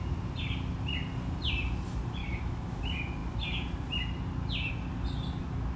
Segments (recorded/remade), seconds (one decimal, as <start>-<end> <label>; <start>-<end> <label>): 0.0-2.2 recorded; 2.2-2.8 remade; 2.8-5.8 recorded